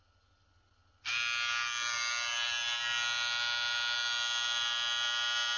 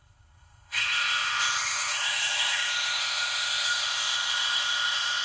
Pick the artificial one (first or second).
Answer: second